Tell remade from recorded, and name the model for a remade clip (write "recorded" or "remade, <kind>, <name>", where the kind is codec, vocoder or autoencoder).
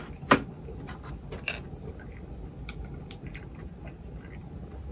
recorded